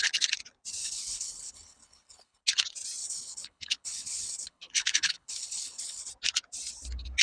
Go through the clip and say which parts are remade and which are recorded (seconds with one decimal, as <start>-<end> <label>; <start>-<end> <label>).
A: 0.0-0.8 recorded; 0.8-2.4 remade; 2.4-3.0 recorded; 3.0-6.1 remade; 6.1-7.2 recorded